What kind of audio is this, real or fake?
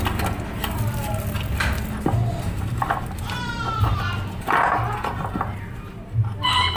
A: real